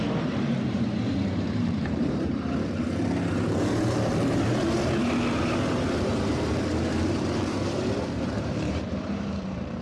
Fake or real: fake